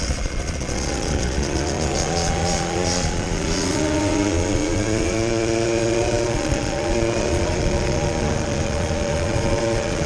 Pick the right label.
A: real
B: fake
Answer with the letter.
B